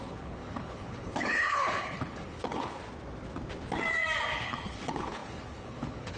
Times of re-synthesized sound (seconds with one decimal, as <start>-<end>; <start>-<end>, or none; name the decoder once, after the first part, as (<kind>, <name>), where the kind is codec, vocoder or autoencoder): 0.0-2.8 (codec, HILCodec); 4.4-6.2